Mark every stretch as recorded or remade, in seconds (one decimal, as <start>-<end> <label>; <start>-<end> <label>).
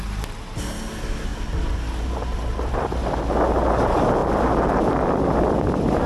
0.0-1.3 recorded; 1.3-3.2 remade; 3.2-6.1 recorded